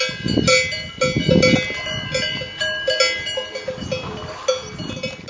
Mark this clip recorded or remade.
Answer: recorded